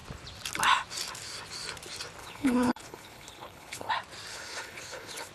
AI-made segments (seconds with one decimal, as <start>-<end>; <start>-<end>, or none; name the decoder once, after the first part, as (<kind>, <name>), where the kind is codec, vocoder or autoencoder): 2.2-3.9 (codec, HILCodec); 4.3-5.3